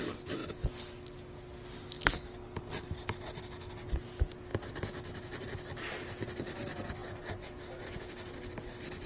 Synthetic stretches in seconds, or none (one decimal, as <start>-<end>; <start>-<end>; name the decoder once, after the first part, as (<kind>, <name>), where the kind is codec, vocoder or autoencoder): none